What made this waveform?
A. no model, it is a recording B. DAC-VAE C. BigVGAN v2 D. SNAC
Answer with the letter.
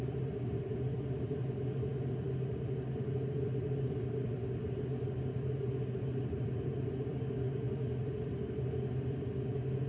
C